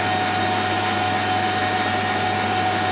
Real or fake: real